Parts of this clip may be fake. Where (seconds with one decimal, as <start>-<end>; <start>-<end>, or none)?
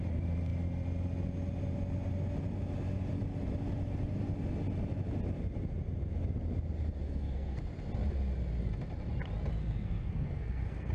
7.0-7.6; 9.6-10.9